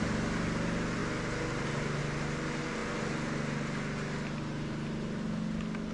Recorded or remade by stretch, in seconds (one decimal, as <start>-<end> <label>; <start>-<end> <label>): 0.0-5.9 recorded

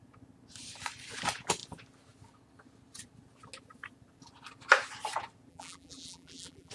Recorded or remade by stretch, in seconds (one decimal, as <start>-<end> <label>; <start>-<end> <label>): 0.0-5.5 recorded; 5.5-6.7 remade